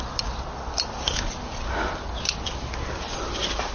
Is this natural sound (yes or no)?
yes